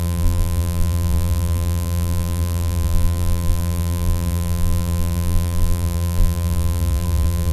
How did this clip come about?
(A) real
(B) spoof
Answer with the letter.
B